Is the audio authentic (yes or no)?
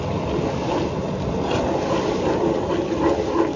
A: yes